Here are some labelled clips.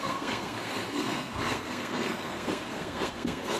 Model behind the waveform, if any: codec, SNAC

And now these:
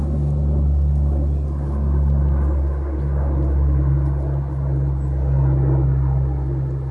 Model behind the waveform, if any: none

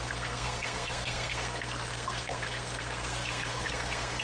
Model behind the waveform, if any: codec, SNAC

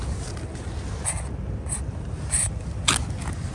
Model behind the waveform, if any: none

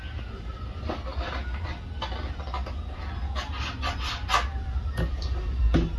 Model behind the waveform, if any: none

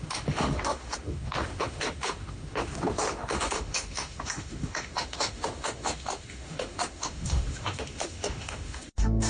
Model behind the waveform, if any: autoencoder, DAC-VAE